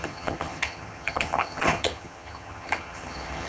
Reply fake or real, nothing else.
fake